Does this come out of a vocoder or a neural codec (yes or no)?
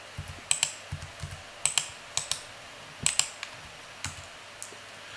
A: no